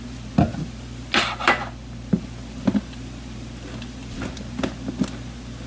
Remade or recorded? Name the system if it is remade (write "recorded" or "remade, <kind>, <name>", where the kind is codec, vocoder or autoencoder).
recorded